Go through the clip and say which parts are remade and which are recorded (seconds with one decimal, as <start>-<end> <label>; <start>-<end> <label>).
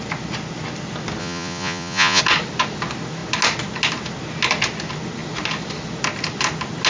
0.0-1.2 recorded; 1.2-2.2 remade; 2.2-6.9 recorded